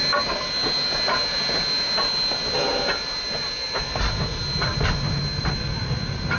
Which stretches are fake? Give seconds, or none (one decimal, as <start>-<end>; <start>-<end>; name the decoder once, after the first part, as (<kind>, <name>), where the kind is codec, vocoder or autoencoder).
none